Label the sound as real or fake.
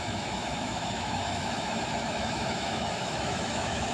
fake